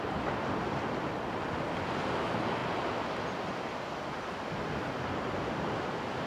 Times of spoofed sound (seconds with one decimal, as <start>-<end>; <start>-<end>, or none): none